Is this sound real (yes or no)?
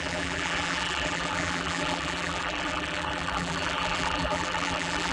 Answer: no